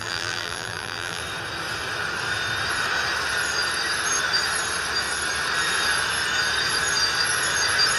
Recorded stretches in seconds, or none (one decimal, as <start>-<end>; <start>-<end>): 1.2-8.0